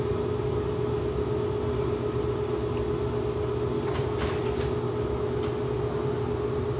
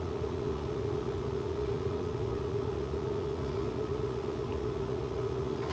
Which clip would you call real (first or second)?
first